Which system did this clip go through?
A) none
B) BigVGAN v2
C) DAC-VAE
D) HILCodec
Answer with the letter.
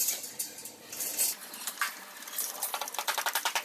B